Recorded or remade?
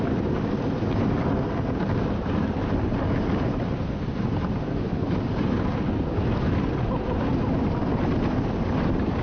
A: recorded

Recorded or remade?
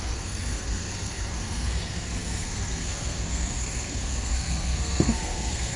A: remade